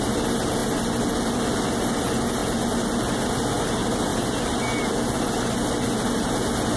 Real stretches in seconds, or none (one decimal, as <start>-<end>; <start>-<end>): 0.0-6.8